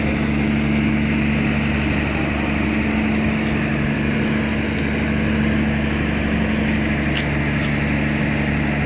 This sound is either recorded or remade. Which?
recorded